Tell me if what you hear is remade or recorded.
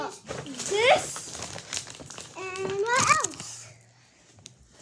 recorded